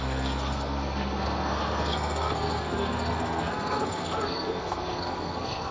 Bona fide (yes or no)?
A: no